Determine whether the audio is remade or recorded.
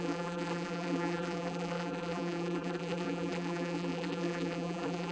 remade